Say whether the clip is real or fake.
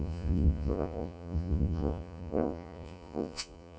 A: fake